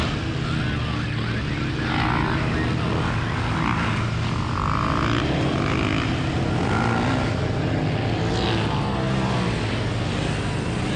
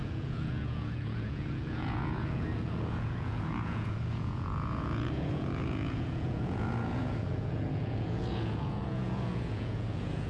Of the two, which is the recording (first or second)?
first